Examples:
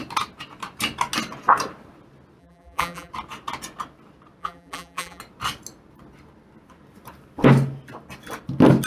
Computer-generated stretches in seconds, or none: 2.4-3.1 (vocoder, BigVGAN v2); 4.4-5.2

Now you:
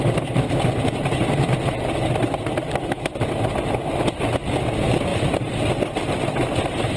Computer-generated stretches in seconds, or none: none

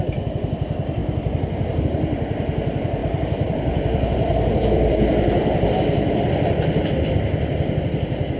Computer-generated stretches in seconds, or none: 1.0-1.8 (vocoder, BigVGAN v2); 3.0-7.1

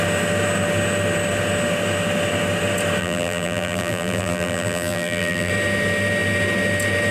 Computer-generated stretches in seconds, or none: 3.0-5.5 (vocoder, BigVGAN v2)

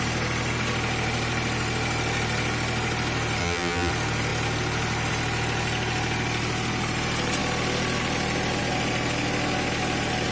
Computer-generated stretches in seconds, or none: 3.4-3.9 (vocoder, BigVGAN v2)

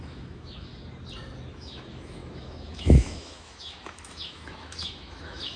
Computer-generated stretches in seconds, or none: 0.0-0.7 (autoencoder, DAC-VAE); 1.5-5.6